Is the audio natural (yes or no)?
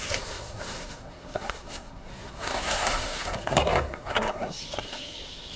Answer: no